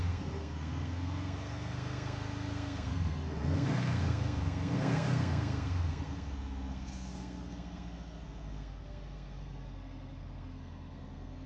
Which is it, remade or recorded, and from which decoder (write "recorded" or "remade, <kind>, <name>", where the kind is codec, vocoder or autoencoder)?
remade, codec, SNAC